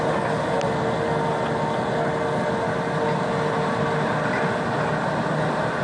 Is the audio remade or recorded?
recorded